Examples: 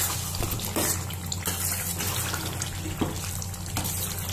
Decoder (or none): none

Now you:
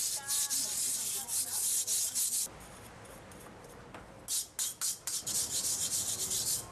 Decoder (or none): none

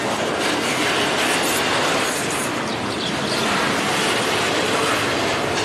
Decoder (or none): none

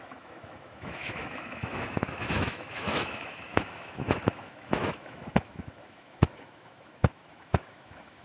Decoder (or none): autoencoder, DAC-VAE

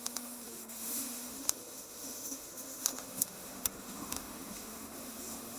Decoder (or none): autoencoder, DAC-VAE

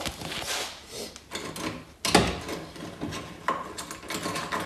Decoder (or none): none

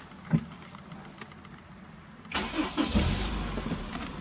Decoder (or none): none